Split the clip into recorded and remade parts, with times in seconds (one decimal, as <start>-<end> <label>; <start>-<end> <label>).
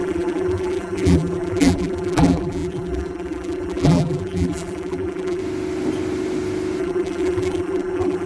0.0-5.4 remade; 5.4-6.8 recorded; 6.8-8.3 remade